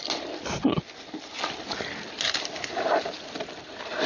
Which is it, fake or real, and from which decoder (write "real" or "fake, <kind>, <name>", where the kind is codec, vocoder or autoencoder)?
real